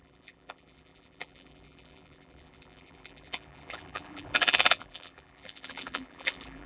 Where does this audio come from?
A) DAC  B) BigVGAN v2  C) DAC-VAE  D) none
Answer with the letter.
B